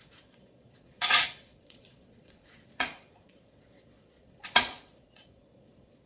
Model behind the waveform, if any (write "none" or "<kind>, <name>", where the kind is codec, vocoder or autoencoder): vocoder, Vocos